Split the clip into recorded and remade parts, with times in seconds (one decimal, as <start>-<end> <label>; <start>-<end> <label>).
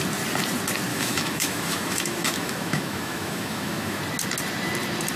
0.0-0.9 recorded; 0.9-4.0 remade; 4.0-5.2 recorded